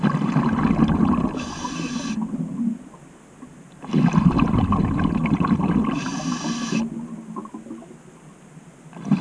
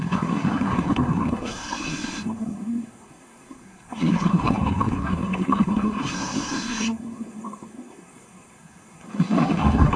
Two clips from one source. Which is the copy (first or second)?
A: second